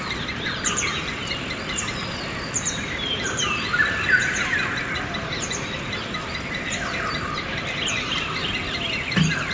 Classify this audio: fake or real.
real